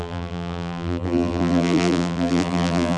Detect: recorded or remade remade